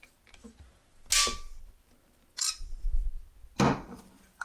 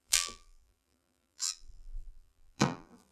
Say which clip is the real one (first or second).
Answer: first